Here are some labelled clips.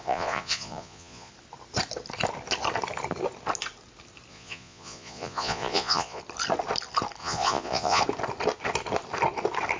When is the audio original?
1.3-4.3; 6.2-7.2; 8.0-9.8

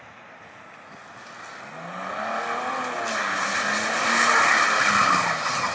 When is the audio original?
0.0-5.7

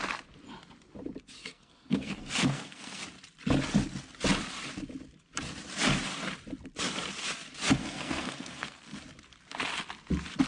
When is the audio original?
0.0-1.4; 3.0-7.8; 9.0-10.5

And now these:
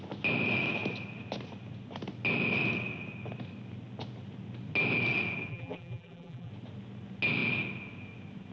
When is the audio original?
0.0-5.5; 6.5-8.5

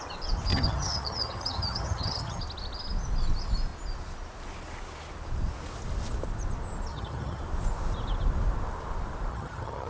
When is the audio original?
0.0-0.5; 2.4-6.9; 7.4-9.3

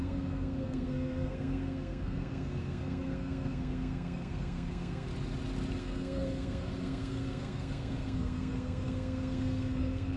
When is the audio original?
5.1-5.8